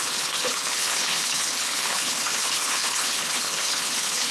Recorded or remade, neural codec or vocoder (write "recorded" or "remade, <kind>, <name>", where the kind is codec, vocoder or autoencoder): remade, codec, HILCodec